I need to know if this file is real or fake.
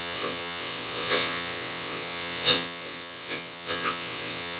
fake